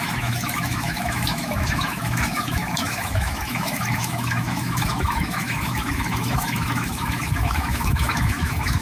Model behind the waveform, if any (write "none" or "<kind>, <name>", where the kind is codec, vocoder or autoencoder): autoencoder, DAC-VAE